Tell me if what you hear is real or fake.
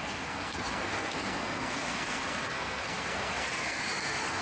fake